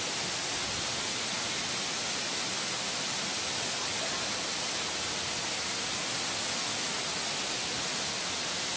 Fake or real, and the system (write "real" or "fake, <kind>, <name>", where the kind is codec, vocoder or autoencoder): real